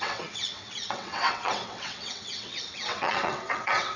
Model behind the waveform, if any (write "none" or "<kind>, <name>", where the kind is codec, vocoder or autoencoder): vocoder, WaveNeXt